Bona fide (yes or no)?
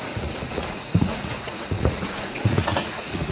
no